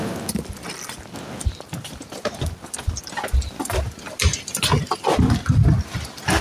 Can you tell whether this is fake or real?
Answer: real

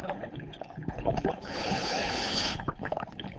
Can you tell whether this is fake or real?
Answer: fake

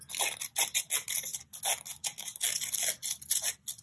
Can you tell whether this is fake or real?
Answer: real